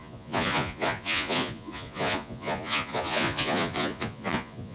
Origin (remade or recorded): remade